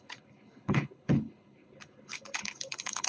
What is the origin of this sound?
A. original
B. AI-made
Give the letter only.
B